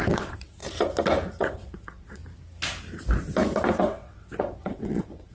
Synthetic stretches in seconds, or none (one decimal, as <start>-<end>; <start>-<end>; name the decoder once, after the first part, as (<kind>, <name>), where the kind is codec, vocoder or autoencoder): 0.0-0.6 (vocoder, WaveNeXt); 1.4-2.2; 3.8-5.3